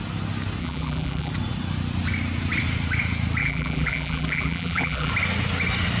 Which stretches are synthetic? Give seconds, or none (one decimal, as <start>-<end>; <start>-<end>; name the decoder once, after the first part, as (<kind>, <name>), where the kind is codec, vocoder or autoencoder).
0.6-1.3 (vocoder, BigVGAN v2); 3.4-5.1